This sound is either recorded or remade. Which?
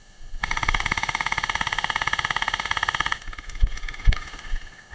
remade